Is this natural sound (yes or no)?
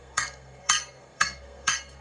no